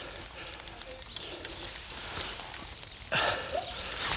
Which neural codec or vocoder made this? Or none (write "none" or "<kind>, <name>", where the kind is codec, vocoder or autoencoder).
none